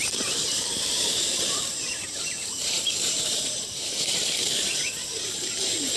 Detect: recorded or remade remade